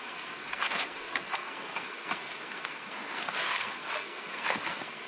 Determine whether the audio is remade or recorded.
remade